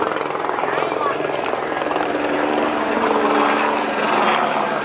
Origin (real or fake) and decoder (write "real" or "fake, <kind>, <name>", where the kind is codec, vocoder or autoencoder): fake, vocoder, BigVGAN v2